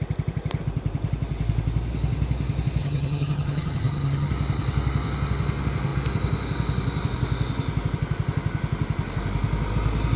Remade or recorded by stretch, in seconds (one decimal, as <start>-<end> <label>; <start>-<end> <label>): 0.0-2.8 recorded; 2.8-4.3 remade; 4.3-10.2 recorded